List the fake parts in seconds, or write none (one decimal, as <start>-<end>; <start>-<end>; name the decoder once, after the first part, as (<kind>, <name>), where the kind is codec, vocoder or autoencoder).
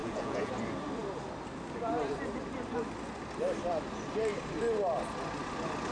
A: 0.0-0.5 (vocoder, Vocos)